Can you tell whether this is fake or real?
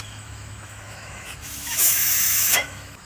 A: fake